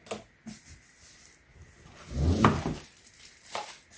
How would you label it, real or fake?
real